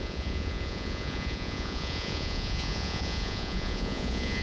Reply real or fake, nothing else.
fake